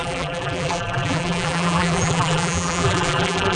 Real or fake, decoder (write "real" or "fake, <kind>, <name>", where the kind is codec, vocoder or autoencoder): fake, vocoder, BigVGAN v2